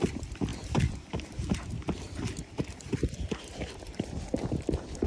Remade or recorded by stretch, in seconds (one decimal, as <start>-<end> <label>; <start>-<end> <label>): 0.0-5.1 remade